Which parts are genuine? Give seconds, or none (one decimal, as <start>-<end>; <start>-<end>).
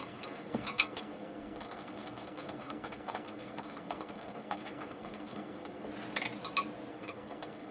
5.9-6.9